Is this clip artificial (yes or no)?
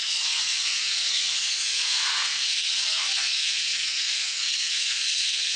yes